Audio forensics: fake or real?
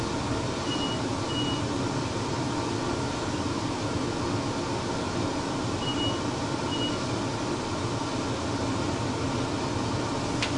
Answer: real